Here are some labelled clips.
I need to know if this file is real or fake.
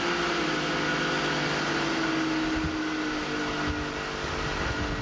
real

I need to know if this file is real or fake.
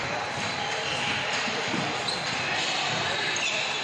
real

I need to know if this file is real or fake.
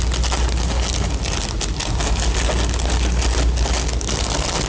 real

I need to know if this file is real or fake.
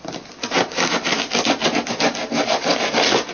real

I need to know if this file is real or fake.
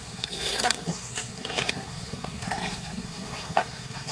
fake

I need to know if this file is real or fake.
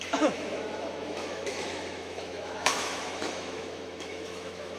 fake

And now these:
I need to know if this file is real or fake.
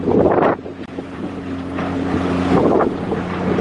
fake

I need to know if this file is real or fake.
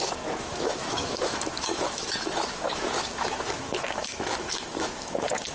fake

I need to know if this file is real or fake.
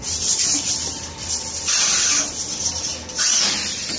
real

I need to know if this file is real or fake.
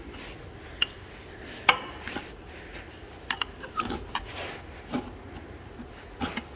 real